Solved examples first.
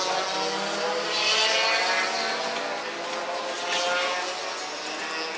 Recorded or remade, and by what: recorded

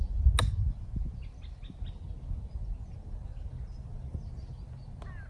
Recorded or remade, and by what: recorded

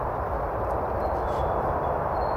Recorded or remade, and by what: recorded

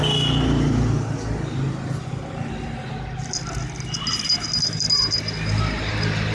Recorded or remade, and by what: recorded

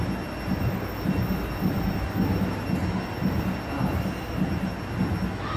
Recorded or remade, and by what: recorded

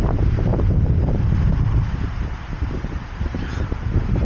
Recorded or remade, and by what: remade, vocoder, BigVGAN v2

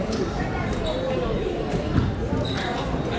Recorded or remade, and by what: recorded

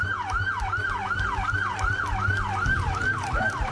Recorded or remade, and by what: recorded